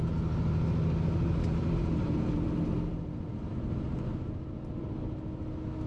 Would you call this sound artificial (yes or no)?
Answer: no